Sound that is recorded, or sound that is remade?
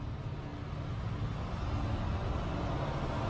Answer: recorded